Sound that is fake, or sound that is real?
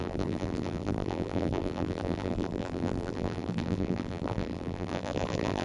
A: fake